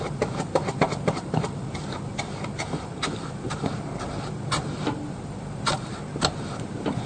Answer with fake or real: real